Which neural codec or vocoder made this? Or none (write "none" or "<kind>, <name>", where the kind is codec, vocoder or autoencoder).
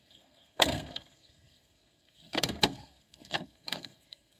codec, SNAC